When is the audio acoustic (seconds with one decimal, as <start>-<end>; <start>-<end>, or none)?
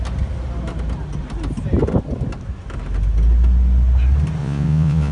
0.0-4.4